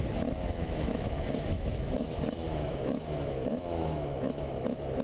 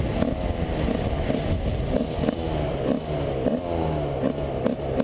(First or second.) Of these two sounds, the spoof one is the first